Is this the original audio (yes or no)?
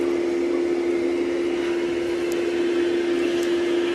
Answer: yes